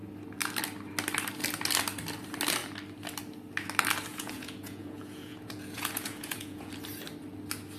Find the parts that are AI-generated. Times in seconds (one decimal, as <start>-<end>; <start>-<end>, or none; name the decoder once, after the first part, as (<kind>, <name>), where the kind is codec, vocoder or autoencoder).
4.1-6.7 (vocoder, Vocos)